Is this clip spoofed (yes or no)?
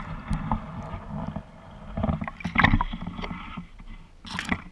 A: no